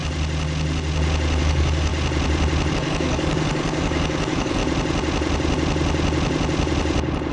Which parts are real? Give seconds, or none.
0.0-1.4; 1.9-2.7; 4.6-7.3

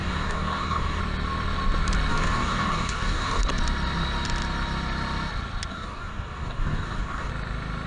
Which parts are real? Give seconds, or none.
1.0-2.1; 3.4-5.7; 7.3-7.9

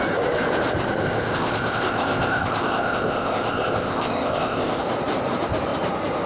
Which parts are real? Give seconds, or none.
0.0-1.0; 4.8-6.3

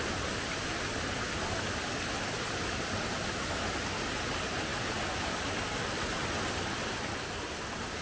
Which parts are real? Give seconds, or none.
0.0-8.0

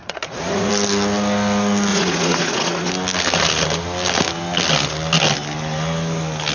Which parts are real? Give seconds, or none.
0.7-1.9; 2.9-6.5

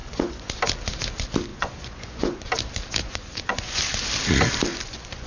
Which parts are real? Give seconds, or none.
0.5-1.5; 2.5-3.0; 3.8-4.7

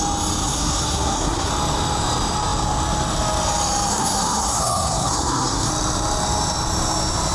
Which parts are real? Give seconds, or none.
0.0-0.4; 1.5-3.9; 5.7-7.3

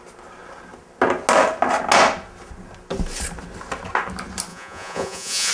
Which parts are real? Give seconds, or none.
0.0-4.5